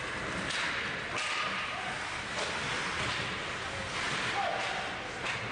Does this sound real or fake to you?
real